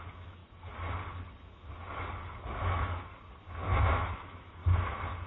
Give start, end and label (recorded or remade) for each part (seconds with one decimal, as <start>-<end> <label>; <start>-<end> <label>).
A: 0.0-0.4 remade; 0.4-3.6 recorded; 3.6-4.6 remade; 4.6-5.3 recorded